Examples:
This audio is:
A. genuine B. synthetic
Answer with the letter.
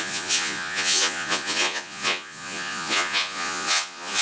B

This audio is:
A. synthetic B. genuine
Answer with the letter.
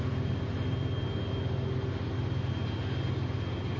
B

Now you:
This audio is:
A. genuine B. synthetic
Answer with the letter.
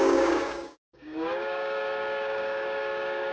B